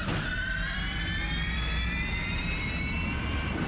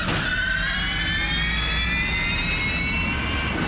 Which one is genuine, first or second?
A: second